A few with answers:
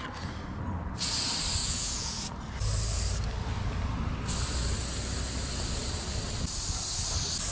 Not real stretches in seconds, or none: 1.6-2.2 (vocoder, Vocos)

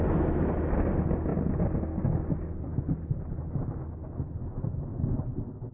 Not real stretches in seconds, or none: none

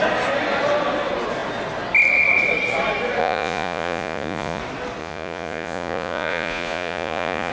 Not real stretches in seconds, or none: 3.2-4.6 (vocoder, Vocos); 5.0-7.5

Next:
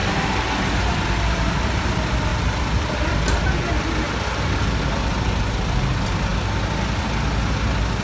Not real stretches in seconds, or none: none